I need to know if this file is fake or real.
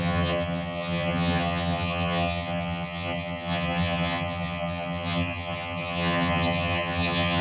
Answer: fake